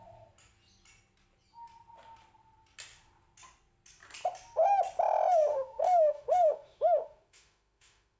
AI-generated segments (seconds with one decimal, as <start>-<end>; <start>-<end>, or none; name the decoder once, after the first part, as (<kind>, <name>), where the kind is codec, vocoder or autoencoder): 5.5-8.2 (autoencoder, DAC-VAE)